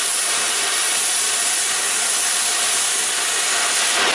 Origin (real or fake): real